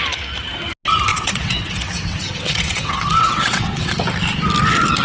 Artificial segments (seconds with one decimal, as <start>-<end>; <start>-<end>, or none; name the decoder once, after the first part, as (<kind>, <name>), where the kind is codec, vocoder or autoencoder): 1.1-3.9 (vocoder, WaveNeXt)